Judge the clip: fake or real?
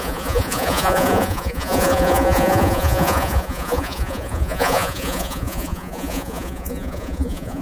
fake